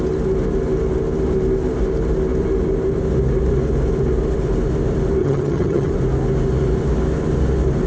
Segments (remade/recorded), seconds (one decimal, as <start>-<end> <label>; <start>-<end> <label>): 0.0-5.2 recorded; 5.2-5.9 remade; 5.9-7.9 recorded